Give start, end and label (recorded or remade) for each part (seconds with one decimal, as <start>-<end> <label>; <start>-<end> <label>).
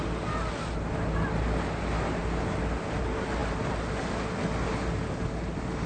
0.0-5.9 recorded